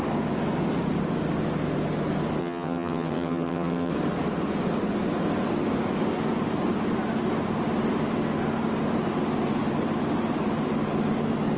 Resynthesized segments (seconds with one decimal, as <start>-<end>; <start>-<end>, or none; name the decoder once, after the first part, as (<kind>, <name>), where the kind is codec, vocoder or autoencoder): 2.4-3.9 (vocoder, HiFi-GAN)